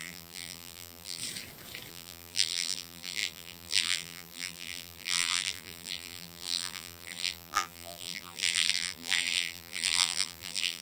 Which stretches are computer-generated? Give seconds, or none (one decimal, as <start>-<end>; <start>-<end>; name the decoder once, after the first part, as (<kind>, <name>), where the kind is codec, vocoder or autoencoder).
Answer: 0.0-1.2 (vocoder, BigVGAN v2); 1.9-10.8